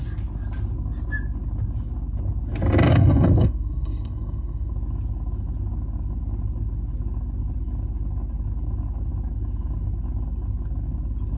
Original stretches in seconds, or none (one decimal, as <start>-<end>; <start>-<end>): 0.0-2.9; 4.7-11.4